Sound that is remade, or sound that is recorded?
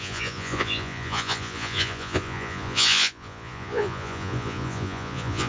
remade